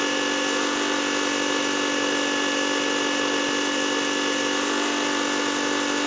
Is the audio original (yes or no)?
yes